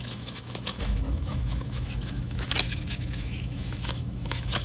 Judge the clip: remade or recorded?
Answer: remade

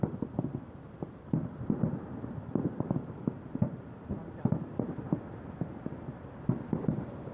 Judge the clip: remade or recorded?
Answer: recorded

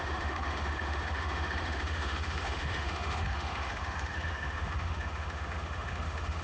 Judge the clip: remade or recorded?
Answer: remade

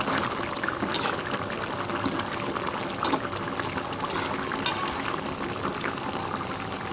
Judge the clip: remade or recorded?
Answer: recorded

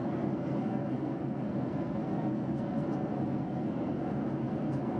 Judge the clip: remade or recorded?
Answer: remade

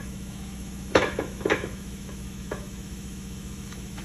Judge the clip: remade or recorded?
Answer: remade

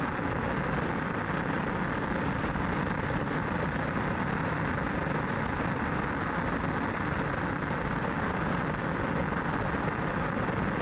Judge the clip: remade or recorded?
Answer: recorded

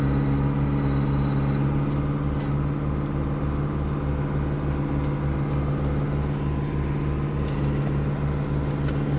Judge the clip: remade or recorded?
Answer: recorded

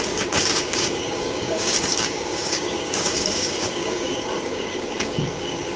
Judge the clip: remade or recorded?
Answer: remade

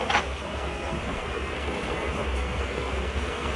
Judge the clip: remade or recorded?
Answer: remade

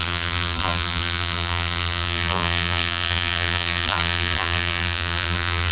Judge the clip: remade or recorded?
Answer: remade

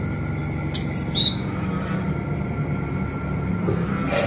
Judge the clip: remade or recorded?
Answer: recorded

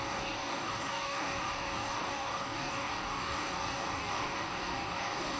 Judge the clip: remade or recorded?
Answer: remade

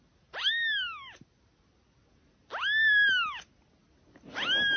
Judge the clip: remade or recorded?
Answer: recorded